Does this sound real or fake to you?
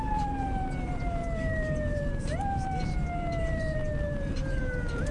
fake